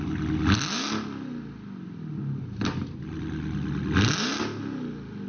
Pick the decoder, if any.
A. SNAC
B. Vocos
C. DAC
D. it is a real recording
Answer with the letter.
D